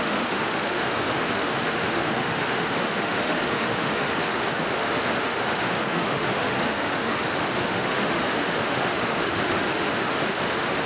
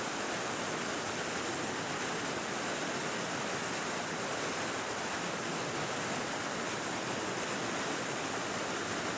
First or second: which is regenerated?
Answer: first